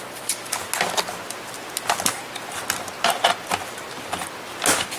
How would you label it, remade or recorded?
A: recorded